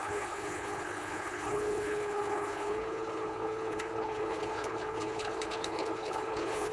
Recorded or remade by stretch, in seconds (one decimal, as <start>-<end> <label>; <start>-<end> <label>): 0.0-6.7 remade